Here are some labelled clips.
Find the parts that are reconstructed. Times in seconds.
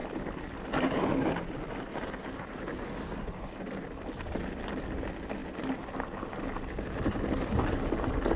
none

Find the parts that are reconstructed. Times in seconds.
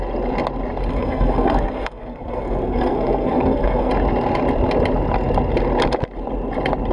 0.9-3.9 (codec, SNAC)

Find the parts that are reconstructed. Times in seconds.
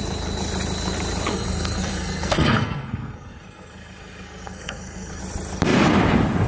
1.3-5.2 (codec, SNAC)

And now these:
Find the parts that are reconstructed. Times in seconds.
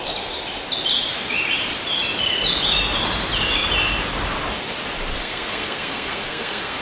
5.2-6.8 (codec, SNAC)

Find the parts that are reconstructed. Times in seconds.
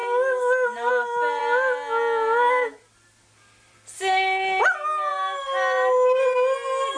none